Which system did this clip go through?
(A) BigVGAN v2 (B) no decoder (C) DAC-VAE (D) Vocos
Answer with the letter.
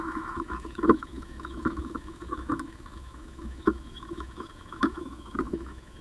C